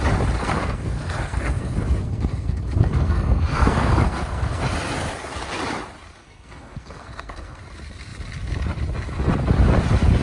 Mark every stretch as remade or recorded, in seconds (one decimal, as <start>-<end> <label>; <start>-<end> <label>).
0.0-0.4 recorded; 0.4-4.6 remade; 4.6-6.2 recorded; 6.2-7.6 remade; 7.6-10.2 recorded